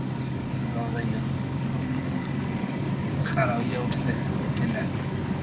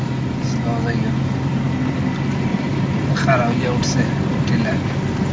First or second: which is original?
second